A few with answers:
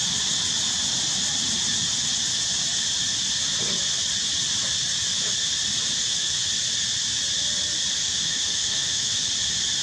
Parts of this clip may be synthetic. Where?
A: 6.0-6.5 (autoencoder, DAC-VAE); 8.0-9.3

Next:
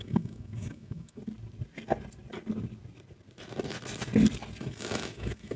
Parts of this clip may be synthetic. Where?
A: 0.0-1.2 (autoencoder, DAC-VAE); 4.6-5.6

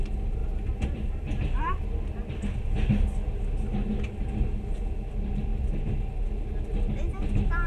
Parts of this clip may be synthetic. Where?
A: none

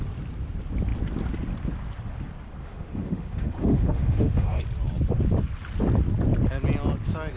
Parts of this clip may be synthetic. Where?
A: 2.6-4.6 (autoencoder, DAC-VAE)

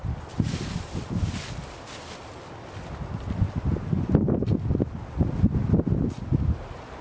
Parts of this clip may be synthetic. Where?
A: none

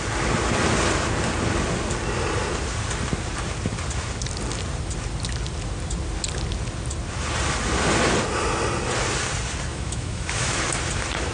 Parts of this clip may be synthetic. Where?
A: 9.7-10.6 (autoencoder, DAC-VAE)

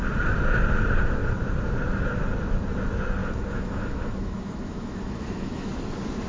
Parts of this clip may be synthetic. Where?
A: 3.2-5.7 (autoencoder, DAC-VAE)

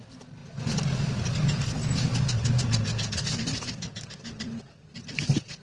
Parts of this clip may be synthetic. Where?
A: none